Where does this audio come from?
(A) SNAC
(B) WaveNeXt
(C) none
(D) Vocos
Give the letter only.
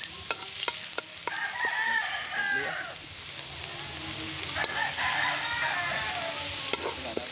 C